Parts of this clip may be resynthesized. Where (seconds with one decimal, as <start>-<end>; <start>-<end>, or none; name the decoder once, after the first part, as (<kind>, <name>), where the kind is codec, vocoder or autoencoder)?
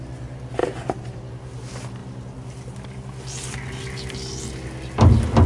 0.6-1.2 (vocoder, BigVGAN v2)